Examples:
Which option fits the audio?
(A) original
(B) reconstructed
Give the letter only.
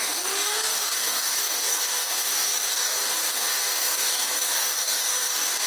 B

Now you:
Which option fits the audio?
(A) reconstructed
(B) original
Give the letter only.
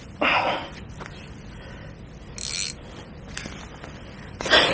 B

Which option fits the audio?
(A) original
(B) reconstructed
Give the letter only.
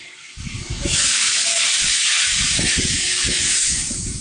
B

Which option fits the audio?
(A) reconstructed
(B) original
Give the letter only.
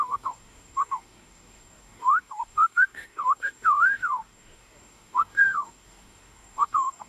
A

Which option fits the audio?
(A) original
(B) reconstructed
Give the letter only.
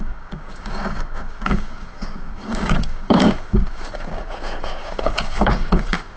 B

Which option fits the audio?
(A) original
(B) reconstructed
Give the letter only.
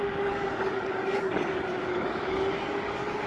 B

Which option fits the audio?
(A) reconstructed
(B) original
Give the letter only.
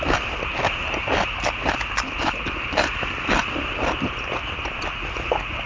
B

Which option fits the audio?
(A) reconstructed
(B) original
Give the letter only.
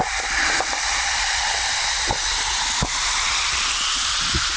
B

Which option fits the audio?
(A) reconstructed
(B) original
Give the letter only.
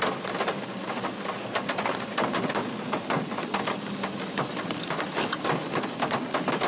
B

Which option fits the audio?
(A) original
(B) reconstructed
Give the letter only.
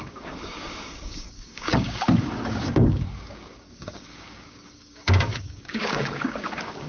B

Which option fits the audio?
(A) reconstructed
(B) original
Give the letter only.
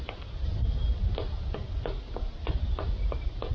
B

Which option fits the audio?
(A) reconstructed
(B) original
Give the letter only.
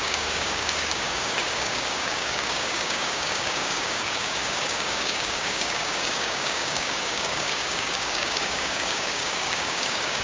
A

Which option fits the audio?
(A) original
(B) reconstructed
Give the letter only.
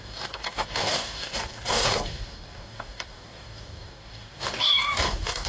B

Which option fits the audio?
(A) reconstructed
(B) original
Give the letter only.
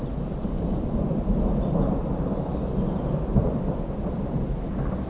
B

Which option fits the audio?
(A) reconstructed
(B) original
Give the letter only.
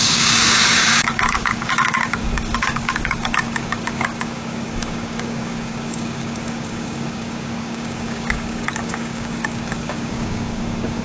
A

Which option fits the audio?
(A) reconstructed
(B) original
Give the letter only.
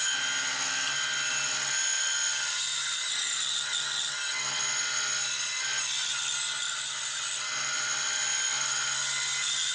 B